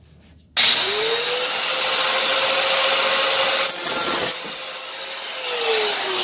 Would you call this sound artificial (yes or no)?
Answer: no